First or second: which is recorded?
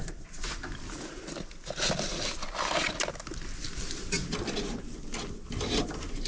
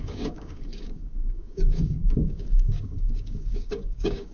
first